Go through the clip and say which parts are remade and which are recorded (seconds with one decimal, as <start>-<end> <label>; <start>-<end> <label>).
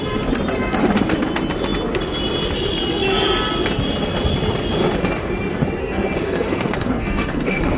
0.0-5.8 recorded; 5.8-7.8 remade